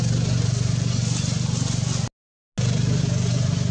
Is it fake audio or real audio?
real